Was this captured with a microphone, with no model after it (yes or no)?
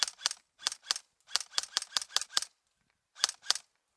yes